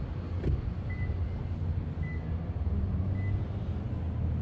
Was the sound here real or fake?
real